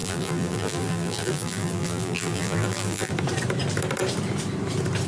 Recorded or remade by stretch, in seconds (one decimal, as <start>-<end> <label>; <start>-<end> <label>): 0.0-3.1 remade; 3.1-5.1 recorded